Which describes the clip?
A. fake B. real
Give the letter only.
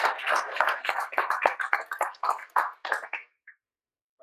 A